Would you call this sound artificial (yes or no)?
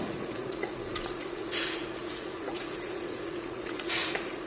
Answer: yes